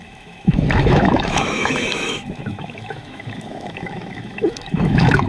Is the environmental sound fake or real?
fake